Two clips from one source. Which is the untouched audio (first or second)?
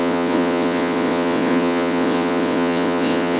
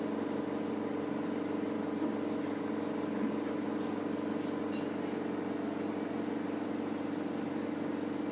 second